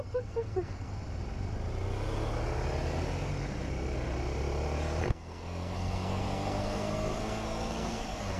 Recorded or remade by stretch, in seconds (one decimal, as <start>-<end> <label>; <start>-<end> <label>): 0.0-0.9 remade; 0.9-5.0 recorded; 5.0-8.4 remade